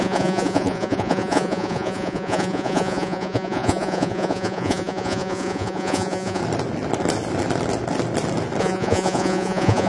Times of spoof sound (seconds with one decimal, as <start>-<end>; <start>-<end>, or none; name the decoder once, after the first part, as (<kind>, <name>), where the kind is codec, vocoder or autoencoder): 0.0-6.4 (vocoder, Vocos); 8.6-9.9